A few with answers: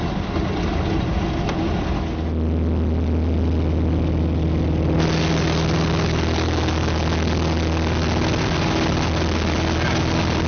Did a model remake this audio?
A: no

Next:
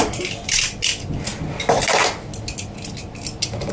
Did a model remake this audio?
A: no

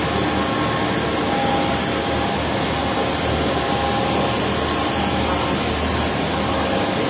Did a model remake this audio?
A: no